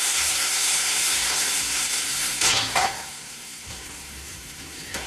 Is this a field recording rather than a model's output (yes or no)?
no